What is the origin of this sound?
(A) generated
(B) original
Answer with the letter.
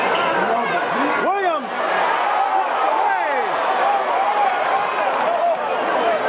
B